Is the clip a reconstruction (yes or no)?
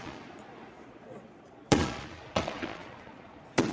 yes